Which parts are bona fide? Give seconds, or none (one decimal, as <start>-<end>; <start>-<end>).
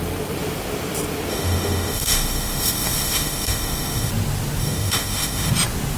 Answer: 0.0-1.3; 4.1-4.6; 5.5-6.0